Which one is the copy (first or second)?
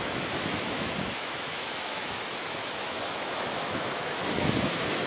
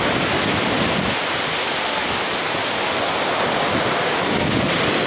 first